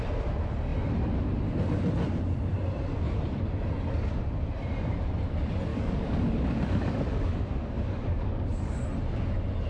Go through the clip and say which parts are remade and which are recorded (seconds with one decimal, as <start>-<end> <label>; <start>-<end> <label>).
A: 0.0-5.7 recorded; 5.7-8.8 remade; 8.8-9.7 recorded